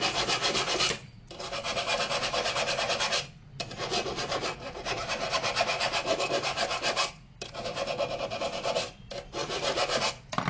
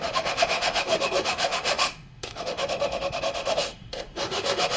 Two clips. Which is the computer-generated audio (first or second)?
second